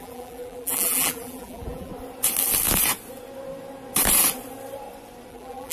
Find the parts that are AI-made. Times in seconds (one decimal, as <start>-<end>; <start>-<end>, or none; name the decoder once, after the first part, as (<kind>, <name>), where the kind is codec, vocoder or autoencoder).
0.0-1.9 (vocoder, BigVGAN v2); 5.3-5.7